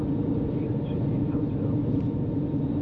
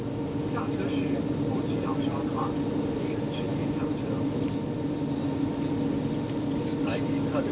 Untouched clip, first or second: second